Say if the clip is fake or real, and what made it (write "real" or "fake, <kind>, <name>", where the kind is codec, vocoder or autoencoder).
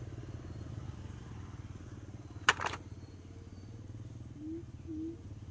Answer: real